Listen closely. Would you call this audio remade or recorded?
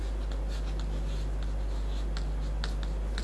recorded